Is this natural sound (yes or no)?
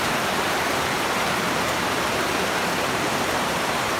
no